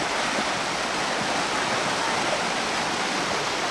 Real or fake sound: real